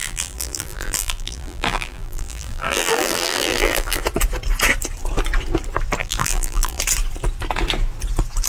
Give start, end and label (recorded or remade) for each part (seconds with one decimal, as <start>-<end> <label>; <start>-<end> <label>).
0.0-4.0 remade; 4.0-6.0 recorded; 6.0-6.8 remade; 6.8-8.5 recorded

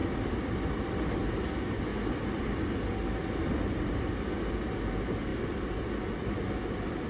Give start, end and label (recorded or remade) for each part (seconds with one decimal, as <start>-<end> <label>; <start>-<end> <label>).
0.0-1.4 remade; 1.4-1.9 recorded; 1.9-2.6 remade; 2.6-3.2 recorded; 3.2-4.1 remade; 4.1-7.1 recorded

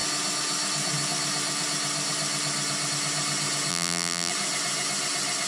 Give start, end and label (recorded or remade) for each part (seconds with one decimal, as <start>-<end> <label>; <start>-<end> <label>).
0.0-3.7 recorded; 3.7-4.3 remade; 4.3-5.5 recorded

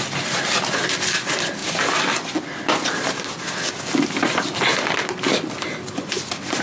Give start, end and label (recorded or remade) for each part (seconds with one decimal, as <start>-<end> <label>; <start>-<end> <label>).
0.0-6.6 recorded

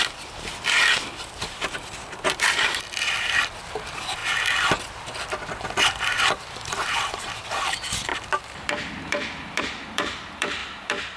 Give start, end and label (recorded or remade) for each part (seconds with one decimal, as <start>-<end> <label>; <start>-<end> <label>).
0.0-4.2 remade; 4.2-5.1 recorded; 5.1-11.2 remade

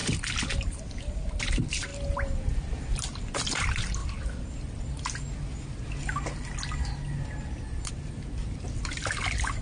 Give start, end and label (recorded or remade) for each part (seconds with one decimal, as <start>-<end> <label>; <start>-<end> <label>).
0.0-1.4 recorded; 1.4-4.0 remade; 4.0-7.9 recorded; 7.9-9.6 remade

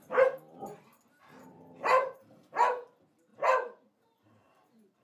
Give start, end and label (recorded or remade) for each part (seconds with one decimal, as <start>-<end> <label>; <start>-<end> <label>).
0.0-1.4 recorded; 1.4-2.4 remade; 2.4-3.3 recorded; 3.3-5.0 remade